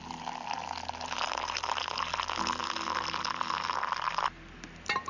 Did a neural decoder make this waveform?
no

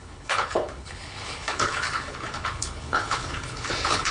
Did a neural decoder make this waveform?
yes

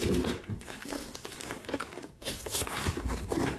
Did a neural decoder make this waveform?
yes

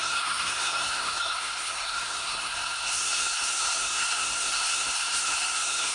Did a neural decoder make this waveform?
yes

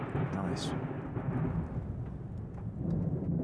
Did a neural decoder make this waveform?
no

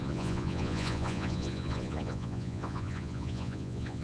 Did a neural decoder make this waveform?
yes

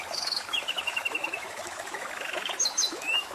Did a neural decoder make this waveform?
yes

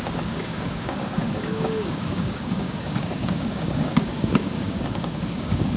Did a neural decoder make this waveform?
yes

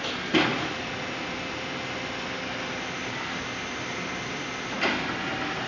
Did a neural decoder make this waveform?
no